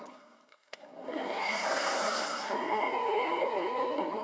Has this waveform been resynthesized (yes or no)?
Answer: yes